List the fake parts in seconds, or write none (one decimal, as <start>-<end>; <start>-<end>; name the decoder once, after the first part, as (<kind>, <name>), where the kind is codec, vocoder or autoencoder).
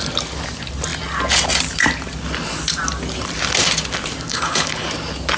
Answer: 4.3-4.9 (codec, HILCodec)